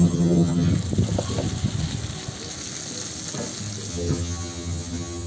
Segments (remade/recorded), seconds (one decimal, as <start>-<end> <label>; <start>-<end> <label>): 0.0-0.7 remade; 0.7-3.9 recorded; 3.9-5.3 remade